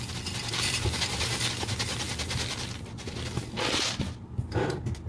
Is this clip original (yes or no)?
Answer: yes